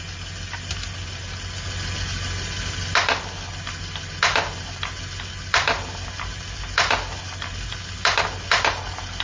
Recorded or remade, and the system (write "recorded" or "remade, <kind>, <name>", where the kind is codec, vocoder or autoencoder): recorded